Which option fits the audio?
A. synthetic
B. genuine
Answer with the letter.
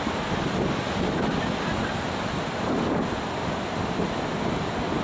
B